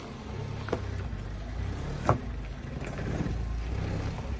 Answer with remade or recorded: recorded